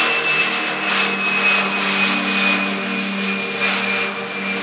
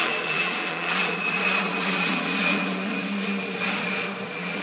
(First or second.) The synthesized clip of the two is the second